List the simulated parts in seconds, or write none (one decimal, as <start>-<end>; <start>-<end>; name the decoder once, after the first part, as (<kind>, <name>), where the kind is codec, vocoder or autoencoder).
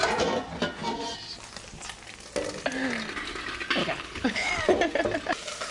3.8-4.5 (codec, HILCodec)